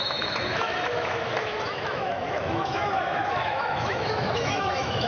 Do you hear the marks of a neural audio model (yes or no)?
yes